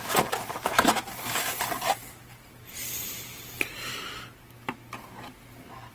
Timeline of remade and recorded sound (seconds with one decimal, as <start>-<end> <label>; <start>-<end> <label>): 0.0-2.0 remade; 2.0-2.5 recorded; 2.5-3.9 remade; 3.9-5.9 recorded